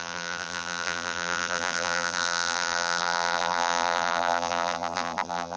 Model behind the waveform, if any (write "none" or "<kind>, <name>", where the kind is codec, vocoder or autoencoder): vocoder, BigVGAN v2